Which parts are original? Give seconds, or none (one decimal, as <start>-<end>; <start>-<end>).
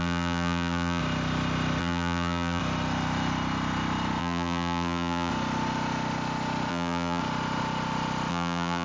1.0-1.8; 2.6-4.2; 5.3-6.7; 7.2-8.3